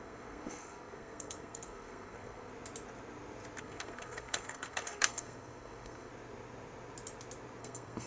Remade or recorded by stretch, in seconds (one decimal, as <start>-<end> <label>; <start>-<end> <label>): 0.0-2.5 remade; 2.5-3.6 recorded; 3.6-6.1 remade; 6.1-7.6 recorded; 7.6-8.1 remade